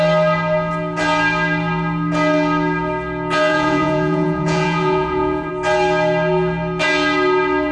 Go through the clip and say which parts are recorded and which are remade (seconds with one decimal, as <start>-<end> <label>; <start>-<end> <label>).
0.0-3.5 recorded; 3.5-5.5 remade; 5.5-7.7 recorded